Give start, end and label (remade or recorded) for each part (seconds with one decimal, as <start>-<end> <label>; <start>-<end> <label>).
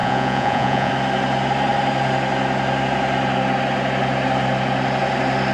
0.0-0.9 remade; 0.9-5.5 recorded